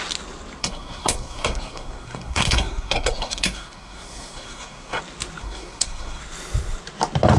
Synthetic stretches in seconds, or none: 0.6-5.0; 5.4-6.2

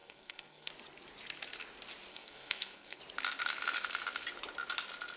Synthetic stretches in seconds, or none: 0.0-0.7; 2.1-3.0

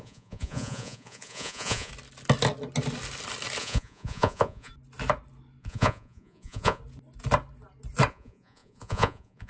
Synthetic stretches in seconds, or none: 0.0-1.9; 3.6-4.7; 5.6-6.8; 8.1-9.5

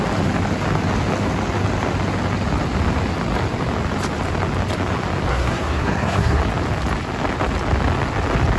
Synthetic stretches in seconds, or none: 5.3-6.4